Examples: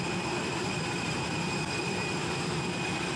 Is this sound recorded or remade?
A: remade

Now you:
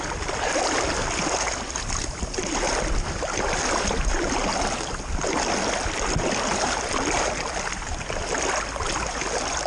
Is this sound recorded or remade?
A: recorded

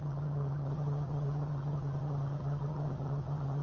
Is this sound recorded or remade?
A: remade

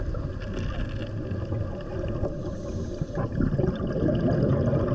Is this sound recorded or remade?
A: recorded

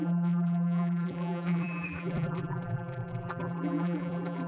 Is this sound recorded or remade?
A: remade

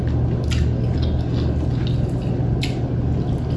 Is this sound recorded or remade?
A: recorded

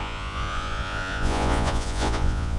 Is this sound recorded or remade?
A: remade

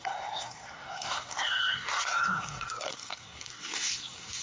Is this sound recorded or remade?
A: remade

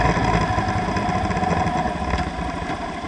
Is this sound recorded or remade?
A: remade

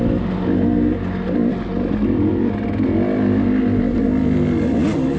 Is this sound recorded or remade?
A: recorded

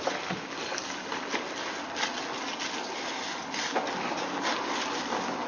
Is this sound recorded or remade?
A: recorded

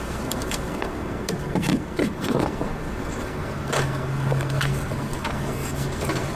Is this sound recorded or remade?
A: remade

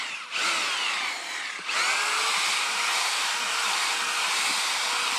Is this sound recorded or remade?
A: recorded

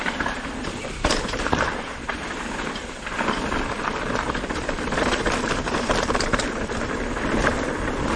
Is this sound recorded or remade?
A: remade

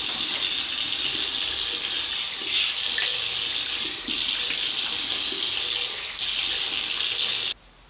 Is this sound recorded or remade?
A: recorded